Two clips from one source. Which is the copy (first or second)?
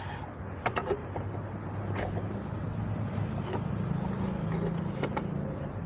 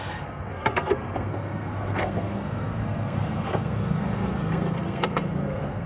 second